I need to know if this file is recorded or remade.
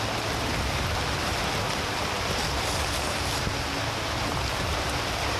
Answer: recorded